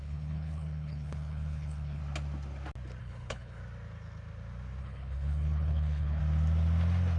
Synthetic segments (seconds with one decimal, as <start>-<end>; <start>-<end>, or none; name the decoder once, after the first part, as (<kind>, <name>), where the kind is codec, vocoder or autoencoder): 0.0-2.0 (codec, HILCodec); 3.0-3.6; 4.8-6.2